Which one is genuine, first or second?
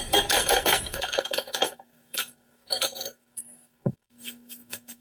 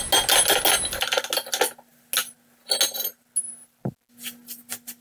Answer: second